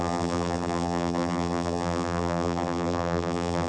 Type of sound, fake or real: fake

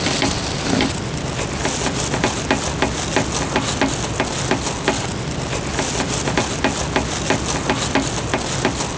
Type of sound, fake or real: real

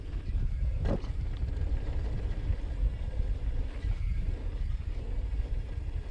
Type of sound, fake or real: real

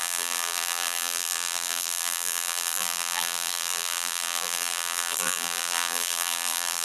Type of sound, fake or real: fake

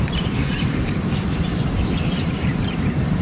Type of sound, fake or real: fake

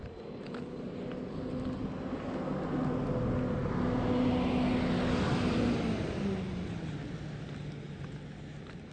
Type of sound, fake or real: real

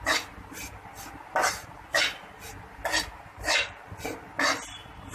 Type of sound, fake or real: real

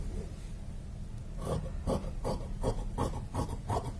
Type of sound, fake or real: real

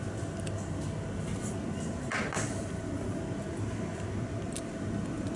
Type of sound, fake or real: fake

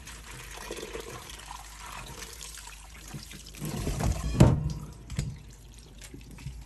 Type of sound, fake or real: fake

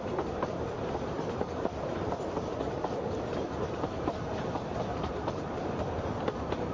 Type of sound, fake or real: fake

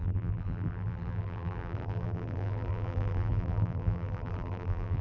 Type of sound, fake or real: fake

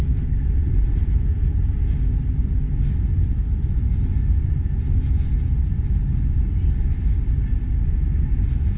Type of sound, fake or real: real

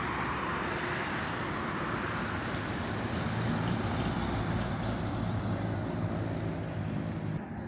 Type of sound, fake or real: real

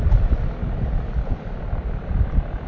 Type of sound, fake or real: real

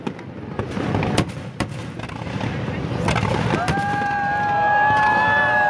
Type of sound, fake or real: real